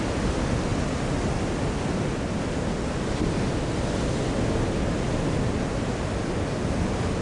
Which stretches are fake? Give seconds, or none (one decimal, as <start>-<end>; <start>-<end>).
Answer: none